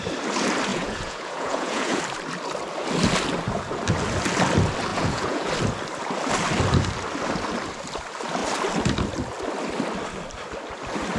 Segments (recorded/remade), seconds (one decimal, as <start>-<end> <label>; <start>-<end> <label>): 0.0-0.7 recorded; 0.7-2.0 remade; 2.0-4.9 recorded; 4.9-5.5 remade; 5.5-11.2 recorded